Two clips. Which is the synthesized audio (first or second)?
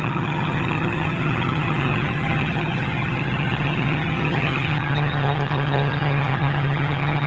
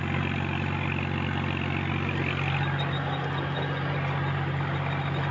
first